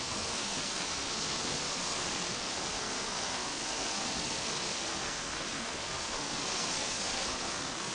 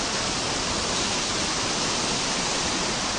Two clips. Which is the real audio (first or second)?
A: second